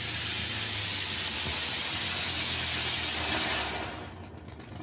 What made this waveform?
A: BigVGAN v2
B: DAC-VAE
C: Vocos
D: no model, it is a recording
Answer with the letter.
D